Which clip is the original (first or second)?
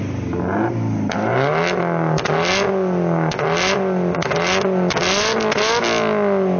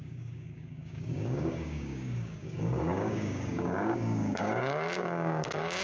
first